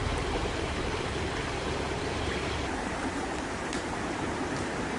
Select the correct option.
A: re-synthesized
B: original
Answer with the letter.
A